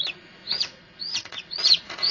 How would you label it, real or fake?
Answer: fake